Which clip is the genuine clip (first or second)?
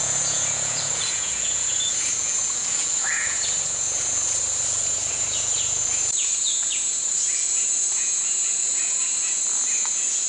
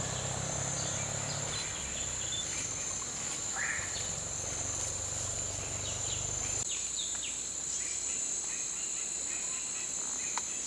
second